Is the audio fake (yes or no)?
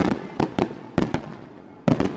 yes